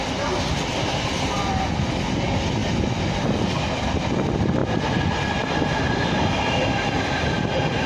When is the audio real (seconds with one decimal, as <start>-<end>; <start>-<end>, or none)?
0.0-7.9